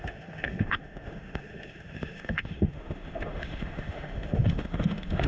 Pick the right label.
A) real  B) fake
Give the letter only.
B